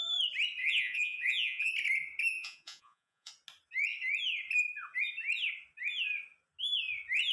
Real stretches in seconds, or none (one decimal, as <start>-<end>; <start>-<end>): 0.0-0.6; 1.7-2.4; 3.3-7.3